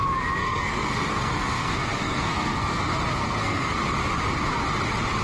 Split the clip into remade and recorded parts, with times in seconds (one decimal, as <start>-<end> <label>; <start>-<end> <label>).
0.0-0.4 recorded; 0.4-2.8 remade; 2.8-3.2 recorded; 3.2-3.8 remade; 3.8-5.2 recorded